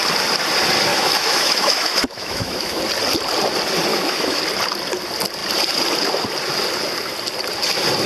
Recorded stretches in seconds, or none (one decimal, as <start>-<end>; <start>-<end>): 0.0-0.9; 2.8-3.9; 4.4-8.1